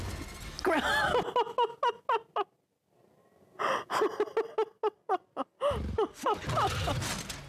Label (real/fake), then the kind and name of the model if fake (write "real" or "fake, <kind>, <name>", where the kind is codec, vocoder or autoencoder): real